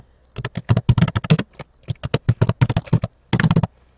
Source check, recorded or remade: recorded